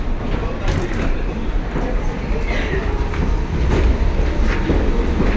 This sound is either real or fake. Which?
real